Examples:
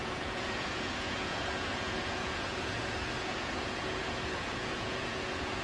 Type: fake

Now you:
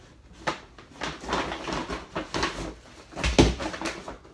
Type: real